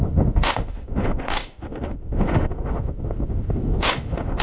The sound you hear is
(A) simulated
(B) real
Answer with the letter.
A